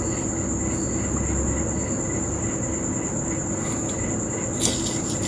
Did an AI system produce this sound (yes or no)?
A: no